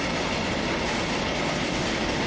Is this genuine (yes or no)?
yes